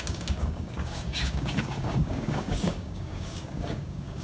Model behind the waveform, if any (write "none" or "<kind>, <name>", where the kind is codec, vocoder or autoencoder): codec, DAC